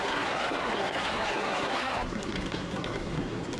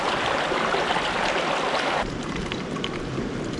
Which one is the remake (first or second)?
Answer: first